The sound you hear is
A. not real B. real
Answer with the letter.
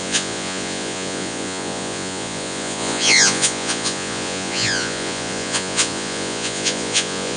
A